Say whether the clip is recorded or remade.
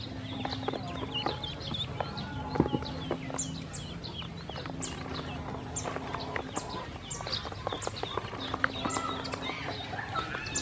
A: recorded